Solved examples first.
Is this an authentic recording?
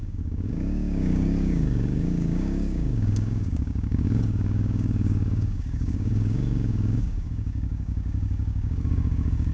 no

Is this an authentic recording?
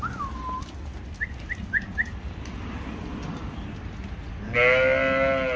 yes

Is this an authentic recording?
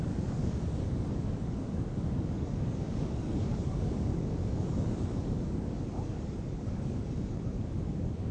no